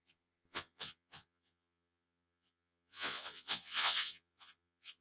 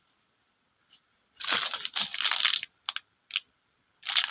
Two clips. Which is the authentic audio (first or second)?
second